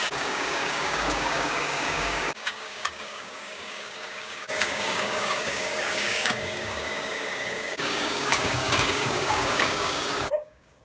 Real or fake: fake